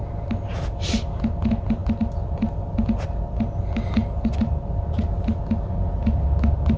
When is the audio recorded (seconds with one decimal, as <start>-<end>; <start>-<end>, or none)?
0.0-6.8